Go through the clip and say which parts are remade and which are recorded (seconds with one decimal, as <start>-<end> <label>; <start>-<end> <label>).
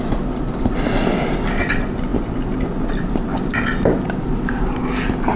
0.0-5.4 recorded